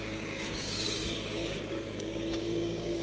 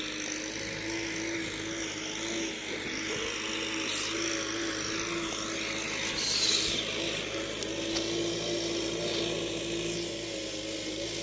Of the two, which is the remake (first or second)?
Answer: first